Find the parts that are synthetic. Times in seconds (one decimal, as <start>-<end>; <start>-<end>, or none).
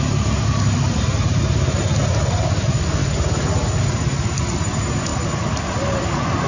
none